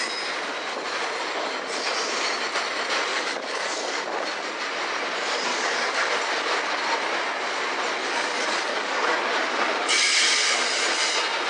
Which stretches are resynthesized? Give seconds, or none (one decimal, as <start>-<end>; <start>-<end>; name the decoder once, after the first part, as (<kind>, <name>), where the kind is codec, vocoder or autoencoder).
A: 3.1-4.0 (codec, DAC); 5.5-6.1; 8.0-9.2